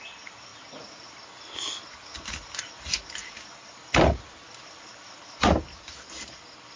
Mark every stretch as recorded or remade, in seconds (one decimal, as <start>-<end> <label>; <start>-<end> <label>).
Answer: 0.0-6.8 recorded